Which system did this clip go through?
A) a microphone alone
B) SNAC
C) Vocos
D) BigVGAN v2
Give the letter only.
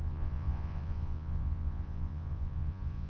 C